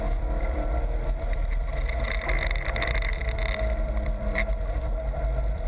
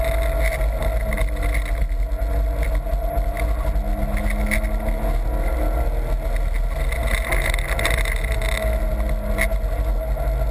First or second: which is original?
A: second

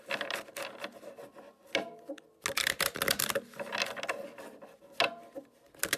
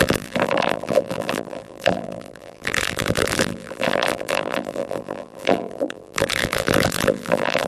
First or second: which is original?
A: first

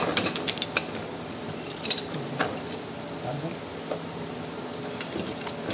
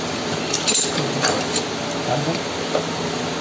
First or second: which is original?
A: second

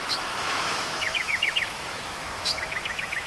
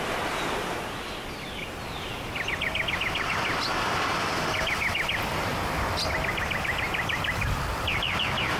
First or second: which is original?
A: second